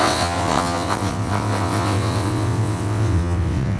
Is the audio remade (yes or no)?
yes